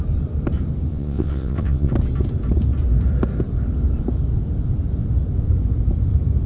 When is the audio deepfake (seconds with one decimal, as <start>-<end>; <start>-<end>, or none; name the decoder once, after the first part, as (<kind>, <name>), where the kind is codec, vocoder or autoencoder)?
0.9-1.9 (vocoder, WaveNeXt)